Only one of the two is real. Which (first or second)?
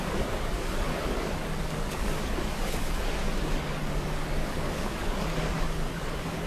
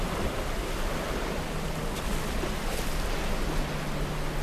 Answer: second